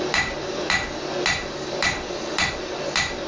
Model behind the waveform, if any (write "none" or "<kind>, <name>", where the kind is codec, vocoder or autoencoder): none